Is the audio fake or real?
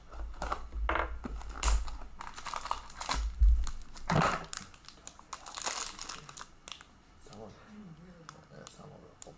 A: real